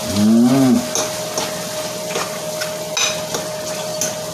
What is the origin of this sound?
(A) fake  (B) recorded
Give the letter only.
B